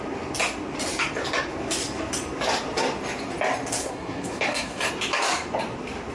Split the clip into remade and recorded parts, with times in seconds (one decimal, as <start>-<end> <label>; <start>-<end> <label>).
0.0-3.8 recorded; 3.8-4.9 remade; 4.9-6.1 recorded